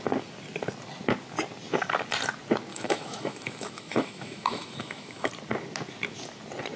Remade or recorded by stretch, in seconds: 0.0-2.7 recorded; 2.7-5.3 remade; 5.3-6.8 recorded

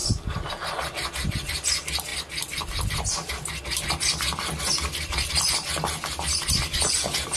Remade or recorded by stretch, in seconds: 0.0-7.4 recorded

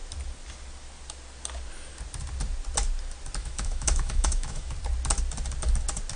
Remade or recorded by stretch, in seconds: 0.0-3.4 recorded; 3.4-4.7 remade; 4.7-6.2 recorded